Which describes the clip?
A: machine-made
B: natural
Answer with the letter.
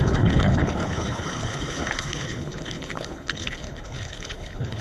A